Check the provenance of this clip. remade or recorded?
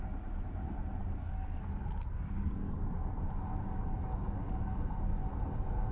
recorded